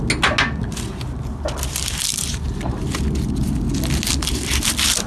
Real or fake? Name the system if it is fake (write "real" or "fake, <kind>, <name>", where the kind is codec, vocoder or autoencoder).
real